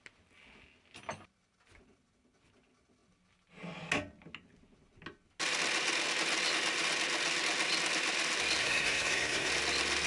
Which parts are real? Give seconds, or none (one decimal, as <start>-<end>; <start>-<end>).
0.0-8.6; 9.5-10.1